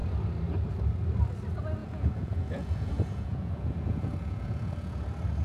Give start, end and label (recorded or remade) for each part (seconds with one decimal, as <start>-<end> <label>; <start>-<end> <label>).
0.0-1.8 recorded; 1.8-5.0 remade; 5.0-5.4 recorded